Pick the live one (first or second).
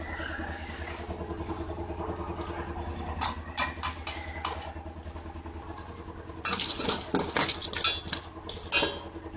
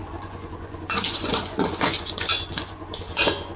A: first